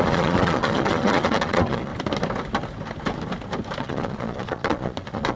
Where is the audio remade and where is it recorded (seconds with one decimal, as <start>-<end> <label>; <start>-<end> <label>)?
0.0-1.9 remade; 1.9-3.8 recorded; 3.8-5.4 remade